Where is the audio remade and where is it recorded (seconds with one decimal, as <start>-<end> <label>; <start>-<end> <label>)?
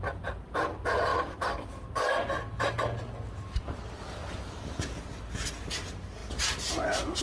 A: 0.0-4.2 recorded; 4.2-5.2 remade; 5.2-7.2 recorded